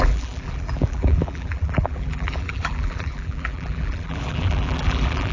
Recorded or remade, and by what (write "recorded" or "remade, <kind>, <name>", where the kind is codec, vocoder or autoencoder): remade, vocoder, BigVGAN v2